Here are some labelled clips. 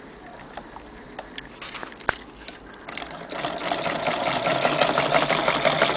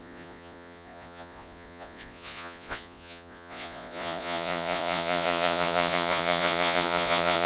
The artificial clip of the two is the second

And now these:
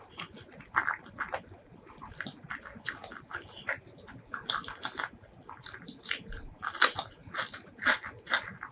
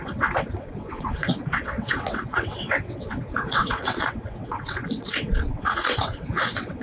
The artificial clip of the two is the second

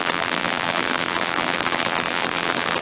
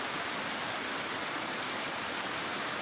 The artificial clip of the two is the first